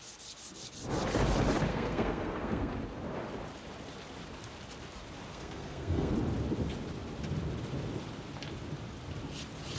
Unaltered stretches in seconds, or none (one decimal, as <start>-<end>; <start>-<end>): 0.0-1.7; 2.7-5.3; 6.1-9.8

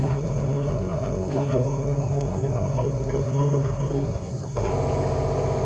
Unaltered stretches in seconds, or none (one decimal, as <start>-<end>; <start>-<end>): 4.7-5.7

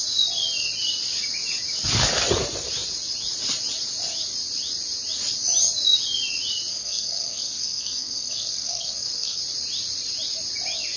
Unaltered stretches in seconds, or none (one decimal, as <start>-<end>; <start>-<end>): 0.0-6.7; 9.4-11.0

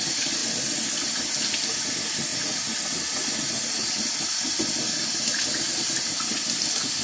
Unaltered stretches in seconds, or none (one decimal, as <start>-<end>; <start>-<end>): 0.0-7.0

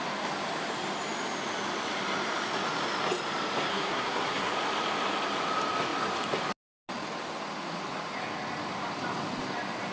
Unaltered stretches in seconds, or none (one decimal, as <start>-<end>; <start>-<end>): 0.0-3.7; 4.5-9.9

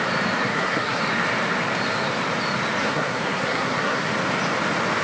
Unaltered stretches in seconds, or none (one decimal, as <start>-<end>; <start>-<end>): 0.0-0.4; 1.0-2.8; 4.1-5.0

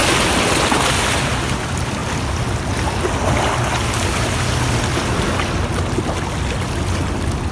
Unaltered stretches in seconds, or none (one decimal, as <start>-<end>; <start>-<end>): 0.0-7.5

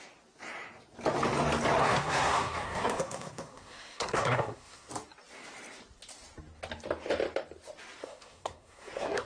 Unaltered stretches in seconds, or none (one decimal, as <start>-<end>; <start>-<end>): 0.0-1.8; 4.9-8.0